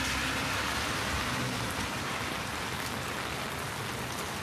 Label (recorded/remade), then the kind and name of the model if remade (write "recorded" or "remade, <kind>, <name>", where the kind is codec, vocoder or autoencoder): recorded